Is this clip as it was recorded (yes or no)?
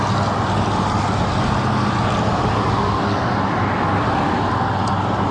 yes